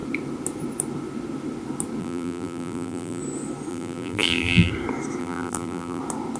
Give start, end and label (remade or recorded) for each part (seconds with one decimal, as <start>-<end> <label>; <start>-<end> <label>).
0.0-2.0 recorded; 2.0-3.2 remade; 3.2-3.7 recorded; 3.7-4.7 remade; 4.7-5.2 recorded; 5.2-6.0 remade; 6.0-6.4 recorded